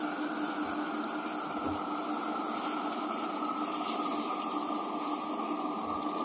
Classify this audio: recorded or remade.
recorded